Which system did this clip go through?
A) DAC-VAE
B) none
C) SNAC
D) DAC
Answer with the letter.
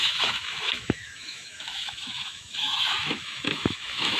A